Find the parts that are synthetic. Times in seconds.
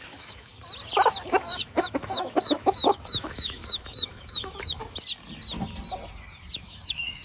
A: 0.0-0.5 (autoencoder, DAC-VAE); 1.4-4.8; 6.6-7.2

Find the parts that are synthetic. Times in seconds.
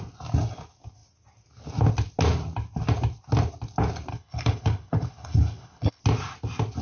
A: 4.1-6.0 (codec, HILCodec)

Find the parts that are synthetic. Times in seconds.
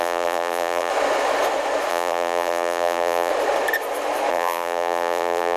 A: 0.0-0.9 (vocoder, BigVGAN v2); 1.9-3.3; 4.3-5.6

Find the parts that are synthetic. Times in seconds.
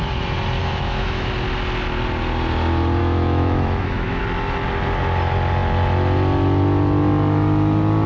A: 0.6-1.3 (autoencoder, DAC-VAE); 3.0-4.2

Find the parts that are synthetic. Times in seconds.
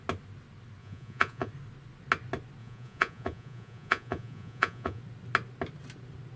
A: 0.8-1.5 (vocoder, Vocos); 2.6-5.0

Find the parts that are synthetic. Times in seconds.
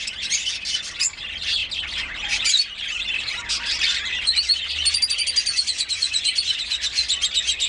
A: 5.5-6.5 (vocoder, Vocos)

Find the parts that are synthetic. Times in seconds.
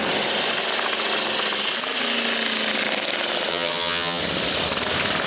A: 3.5-4.2 (vocoder, HiFi-GAN)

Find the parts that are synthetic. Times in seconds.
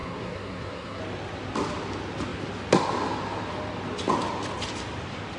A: 0.0-1.0 (codec, SNAC)